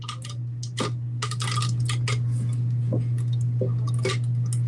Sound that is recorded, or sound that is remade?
recorded